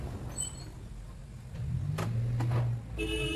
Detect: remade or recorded recorded